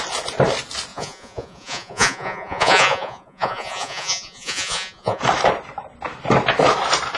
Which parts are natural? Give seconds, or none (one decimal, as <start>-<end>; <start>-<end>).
0.0-0.9; 5.2-7.2